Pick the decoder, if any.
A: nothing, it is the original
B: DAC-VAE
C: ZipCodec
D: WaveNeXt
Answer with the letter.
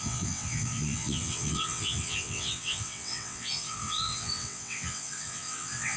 D